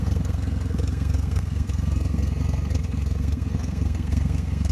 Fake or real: fake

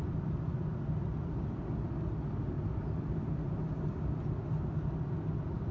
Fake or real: real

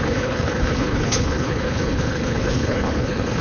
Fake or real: fake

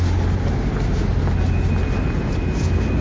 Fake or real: real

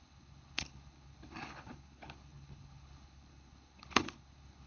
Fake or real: fake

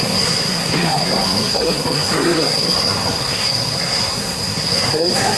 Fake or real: fake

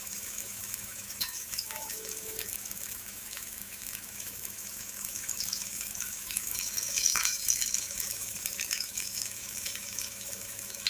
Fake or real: fake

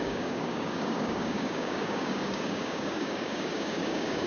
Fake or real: fake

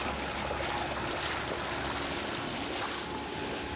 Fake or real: real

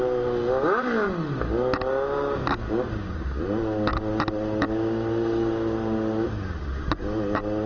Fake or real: real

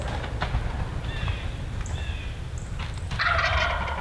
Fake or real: real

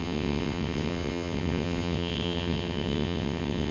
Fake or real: fake